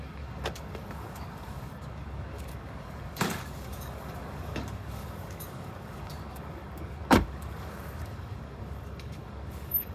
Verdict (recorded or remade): remade